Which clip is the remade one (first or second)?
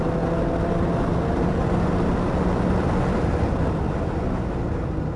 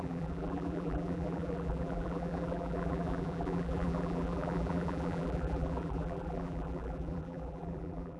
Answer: second